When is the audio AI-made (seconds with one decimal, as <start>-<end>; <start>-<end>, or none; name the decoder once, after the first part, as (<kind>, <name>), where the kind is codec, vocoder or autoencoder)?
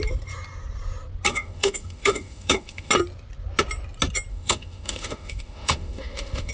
1.3-2.9 (autoencoder, DAC-VAE); 4.3-6.5